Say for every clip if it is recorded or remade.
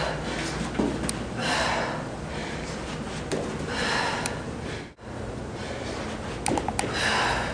recorded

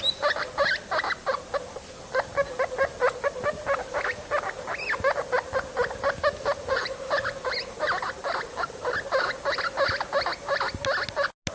recorded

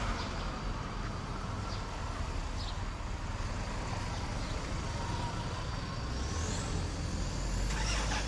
recorded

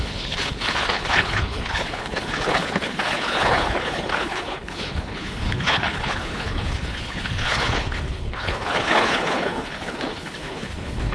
remade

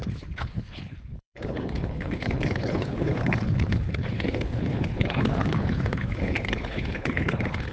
remade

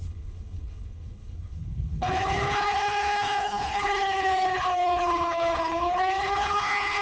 remade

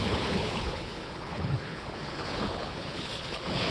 remade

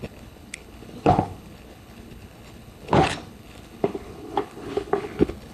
remade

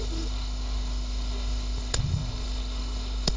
remade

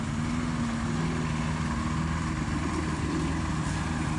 recorded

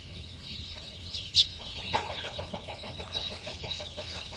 remade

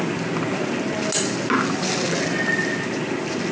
recorded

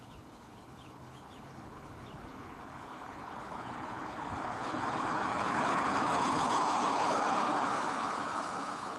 remade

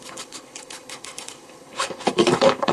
remade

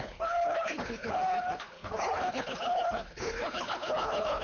remade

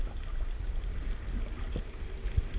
recorded